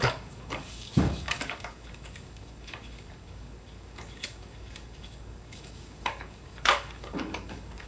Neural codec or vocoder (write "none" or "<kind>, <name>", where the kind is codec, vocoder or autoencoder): codec, DAC